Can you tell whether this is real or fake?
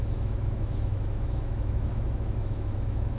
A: fake